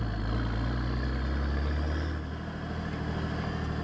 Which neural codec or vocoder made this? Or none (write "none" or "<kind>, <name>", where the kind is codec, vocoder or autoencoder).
none